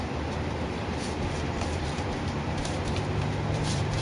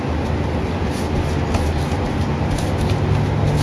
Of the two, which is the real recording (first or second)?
second